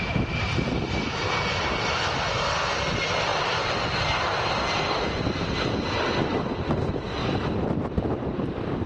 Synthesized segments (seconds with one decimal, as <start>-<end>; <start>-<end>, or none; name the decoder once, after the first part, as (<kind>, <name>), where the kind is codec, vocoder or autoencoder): 3.3-5.2 (vocoder, BigVGAN v2); 7.2-8.9